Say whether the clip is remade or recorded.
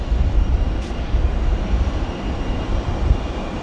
remade